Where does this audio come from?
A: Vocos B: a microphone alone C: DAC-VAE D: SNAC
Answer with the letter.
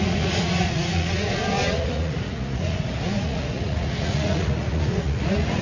A